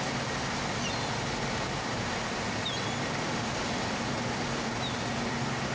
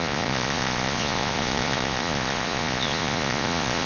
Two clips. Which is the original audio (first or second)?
first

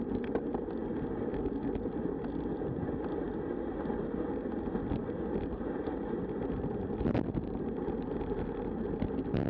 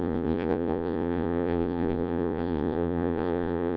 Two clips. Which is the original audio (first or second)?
first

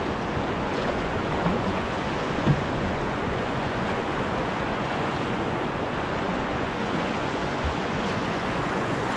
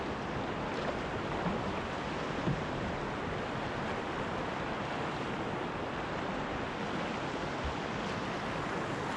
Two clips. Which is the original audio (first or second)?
second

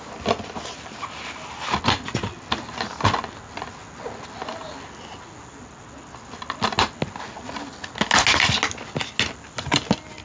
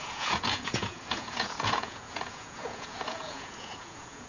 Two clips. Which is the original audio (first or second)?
first